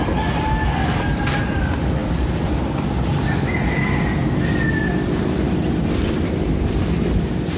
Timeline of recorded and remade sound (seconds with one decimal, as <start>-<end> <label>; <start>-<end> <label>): 0.0-7.6 recorded